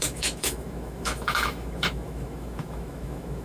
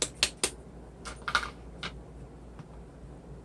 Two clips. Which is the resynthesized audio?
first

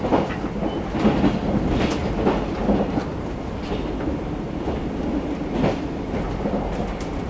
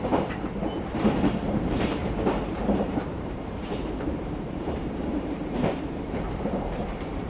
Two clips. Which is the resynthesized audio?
second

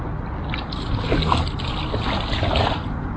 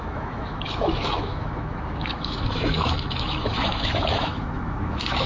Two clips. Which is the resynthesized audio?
second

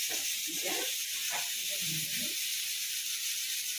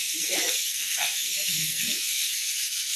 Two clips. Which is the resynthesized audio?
second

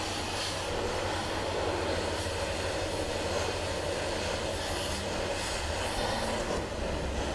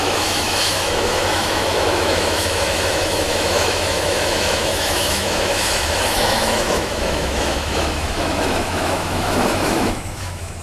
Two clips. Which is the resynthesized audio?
second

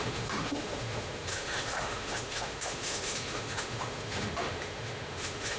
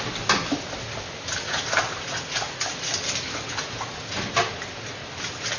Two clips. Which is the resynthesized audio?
first